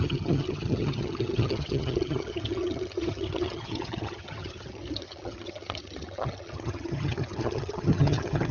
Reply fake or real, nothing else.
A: fake